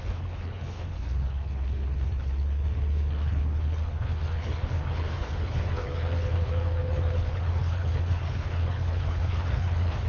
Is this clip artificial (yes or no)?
yes